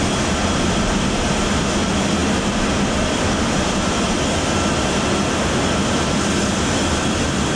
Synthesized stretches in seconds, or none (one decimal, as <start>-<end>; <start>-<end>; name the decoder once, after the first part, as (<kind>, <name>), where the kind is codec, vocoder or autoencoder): none